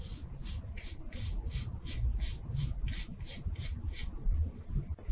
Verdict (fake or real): real